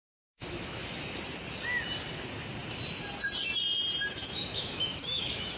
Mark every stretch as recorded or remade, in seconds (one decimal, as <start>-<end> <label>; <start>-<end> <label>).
0.0-0.8 remade; 0.8-4.1 recorded; 4.1-5.6 remade